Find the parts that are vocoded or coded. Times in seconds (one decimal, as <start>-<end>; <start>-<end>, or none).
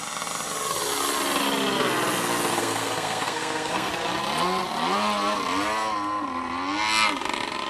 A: 2.5-3.9